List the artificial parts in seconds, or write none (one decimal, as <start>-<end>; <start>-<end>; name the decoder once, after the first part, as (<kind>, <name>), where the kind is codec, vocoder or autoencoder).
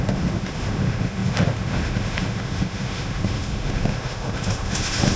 0.0-5.2 (autoencoder, DAC-VAE)